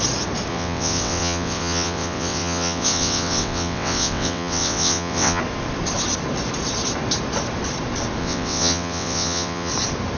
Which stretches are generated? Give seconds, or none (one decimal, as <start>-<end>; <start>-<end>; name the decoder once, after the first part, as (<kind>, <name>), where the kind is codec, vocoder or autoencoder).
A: 0.5-5.4 (vocoder, WaveNeXt); 8.2-9.7